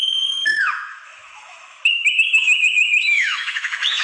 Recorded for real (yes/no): no